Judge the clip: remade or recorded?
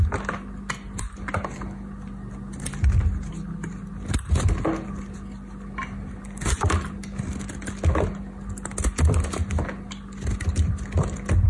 recorded